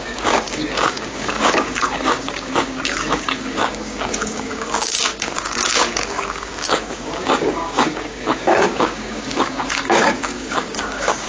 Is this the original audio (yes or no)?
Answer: no